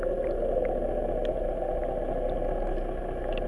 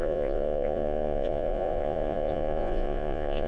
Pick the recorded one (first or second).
first